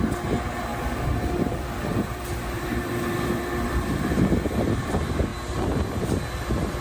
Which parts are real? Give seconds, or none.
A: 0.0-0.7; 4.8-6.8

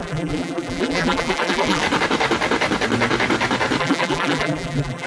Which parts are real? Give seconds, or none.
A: 1.8-3.8

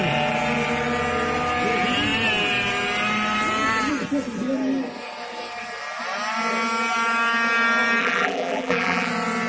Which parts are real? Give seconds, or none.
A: 0.0-8.0; 9.1-9.5

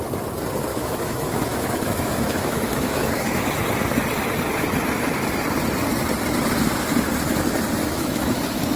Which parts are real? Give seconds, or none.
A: 0.0-0.7; 3.4-7.8; 8.4-8.8

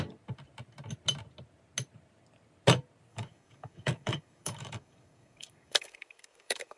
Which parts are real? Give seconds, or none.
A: 0.0-3.1